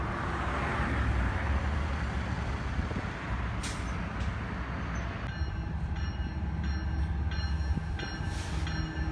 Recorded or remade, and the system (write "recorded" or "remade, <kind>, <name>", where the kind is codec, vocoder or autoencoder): recorded